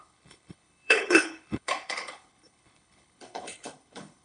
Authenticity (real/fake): fake